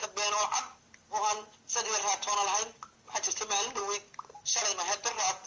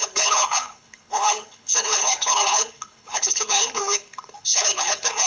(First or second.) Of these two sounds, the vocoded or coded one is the second